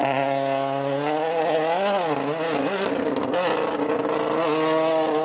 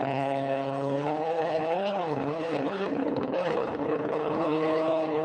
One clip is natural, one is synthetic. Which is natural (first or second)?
first